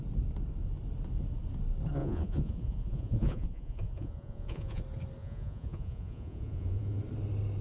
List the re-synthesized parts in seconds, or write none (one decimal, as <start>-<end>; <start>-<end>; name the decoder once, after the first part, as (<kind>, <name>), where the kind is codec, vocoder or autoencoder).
2.0-4.8 (vocoder, Vocos); 5.2-7.0